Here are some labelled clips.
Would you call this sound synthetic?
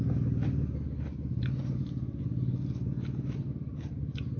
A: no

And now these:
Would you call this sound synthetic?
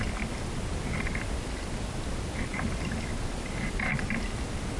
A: no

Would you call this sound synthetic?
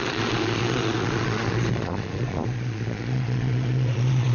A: yes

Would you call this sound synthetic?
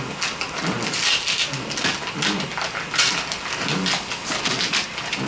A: no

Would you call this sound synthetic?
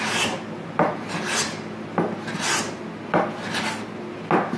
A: no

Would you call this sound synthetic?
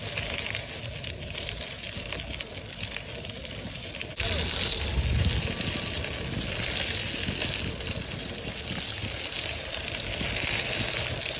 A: no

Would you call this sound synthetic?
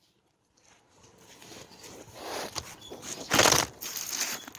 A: no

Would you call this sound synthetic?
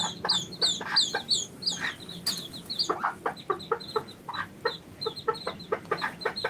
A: no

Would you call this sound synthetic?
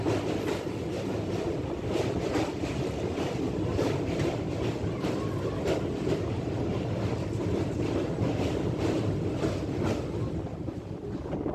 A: no